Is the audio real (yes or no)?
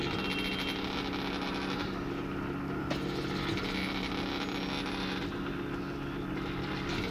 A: yes